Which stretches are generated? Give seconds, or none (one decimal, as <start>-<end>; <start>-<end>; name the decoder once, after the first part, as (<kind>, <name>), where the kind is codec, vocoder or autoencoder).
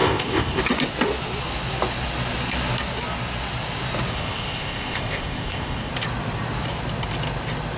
0.0-0.6 (codec, ZipCodec); 4.1-5.9